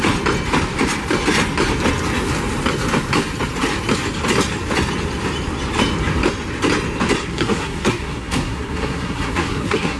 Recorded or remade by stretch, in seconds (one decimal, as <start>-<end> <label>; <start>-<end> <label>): 0.0-7.2 recorded; 7.2-10.0 remade